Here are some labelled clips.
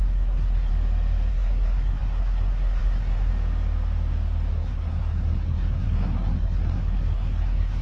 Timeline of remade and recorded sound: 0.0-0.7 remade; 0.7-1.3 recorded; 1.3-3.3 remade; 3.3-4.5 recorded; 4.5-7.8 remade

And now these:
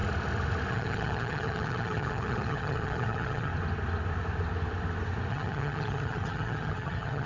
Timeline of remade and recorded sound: 0.0-0.7 recorded; 0.7-3.5 remade; 3.5-5.3 recorded; 5.3-7.3 remade

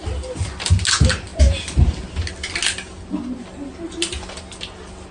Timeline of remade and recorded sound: 0.0-5.1 recorded

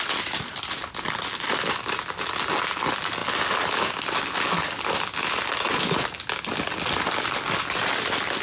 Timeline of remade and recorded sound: 0.0-8.4 recorded

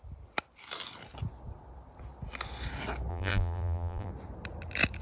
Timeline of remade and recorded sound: 0.0-3.1 recorded; 3.1-4.1 remade; 4.1-5.0 recorded

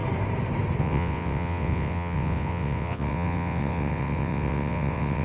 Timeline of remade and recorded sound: 0.0-0.8 recorded; 0.8-5.2 remade

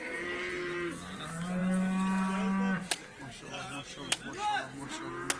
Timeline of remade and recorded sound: 0.0-5.4 recorded

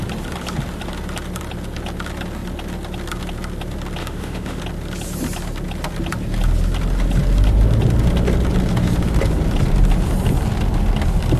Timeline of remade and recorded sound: 0.0-4.0 recorded; 4.0-4.6 remade; 4.6-11.4 recorded